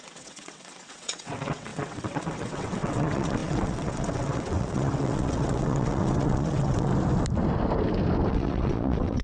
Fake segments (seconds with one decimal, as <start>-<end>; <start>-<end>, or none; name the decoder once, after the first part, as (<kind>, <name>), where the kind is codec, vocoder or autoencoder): 0.0-6.9 (vocoder, WaveNeXt); 8.3-9.2